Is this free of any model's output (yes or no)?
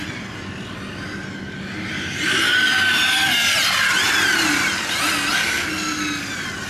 yes